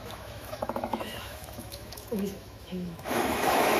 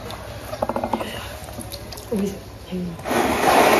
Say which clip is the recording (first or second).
second